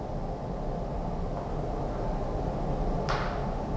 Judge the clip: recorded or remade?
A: recorded